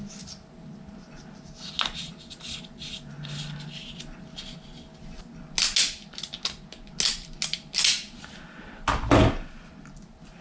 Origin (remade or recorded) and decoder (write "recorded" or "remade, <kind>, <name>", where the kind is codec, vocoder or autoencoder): recorded